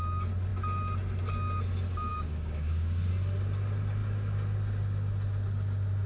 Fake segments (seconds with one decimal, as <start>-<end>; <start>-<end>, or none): 2.1-3.1